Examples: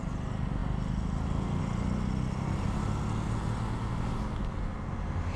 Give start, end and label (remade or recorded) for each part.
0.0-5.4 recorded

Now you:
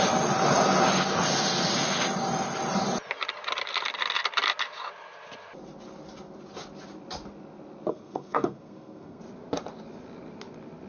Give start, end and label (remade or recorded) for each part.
0.0-7.9 recorded; 7.9-9.2 remade; 9.2-10.9 recorded

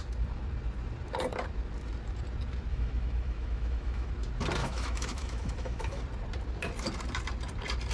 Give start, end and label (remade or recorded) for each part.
0.0-2.7 recorded; 2.7-4.1 remade; 4.1-4.6 recorded; 4.6-6.0 remade; 6.0-7.9 recorded

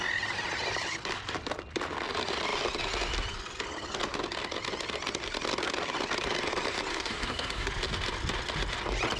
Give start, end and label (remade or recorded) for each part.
0.0-6.9 recorded; 6.9-7.7 remade; 7.7-9.2 recorded

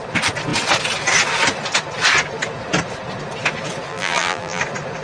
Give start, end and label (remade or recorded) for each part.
0.0-3.9 recorded; 3.9-4.6 remade; 4.6-5.0 recorded

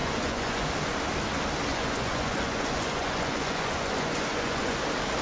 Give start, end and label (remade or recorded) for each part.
0.0-0.6 remade; 0.6-1.7 recorded; 1.7-4.8 remade; 4.8-5.2 recorded

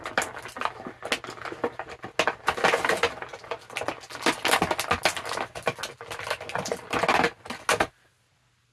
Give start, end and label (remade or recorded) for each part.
0.0-8.7 recorded

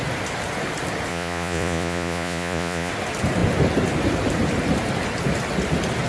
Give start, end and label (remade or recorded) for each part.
0.0-1.1 recorded; 1.1-2.9 remade; 2.9-6.1 recorded